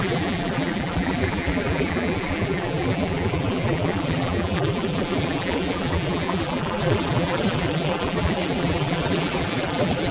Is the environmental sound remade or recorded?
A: remade